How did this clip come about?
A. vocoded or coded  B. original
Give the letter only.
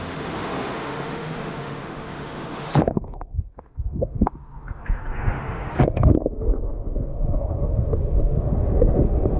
A